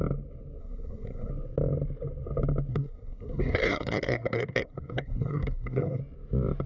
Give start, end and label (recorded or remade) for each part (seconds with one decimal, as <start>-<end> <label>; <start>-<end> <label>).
0.0-0.6 recorded; 0.6-1.3 remade; 1.3-2.7 recorded; 2.7-6.0 remade; 6.0-6.7 recorded